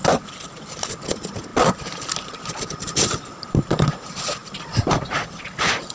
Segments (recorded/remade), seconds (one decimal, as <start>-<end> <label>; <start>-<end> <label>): 0.0-0.8 remade; 0.8-1.5 recorded; 1.5-3.5 remade; 3.5-4.4 recorded; 4.4-5.4 remade; 5.4-5.9 recorded